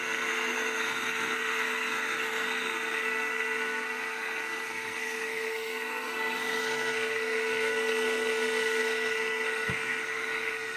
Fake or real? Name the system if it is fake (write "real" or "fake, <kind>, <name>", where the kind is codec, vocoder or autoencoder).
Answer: fake, codec, SNAC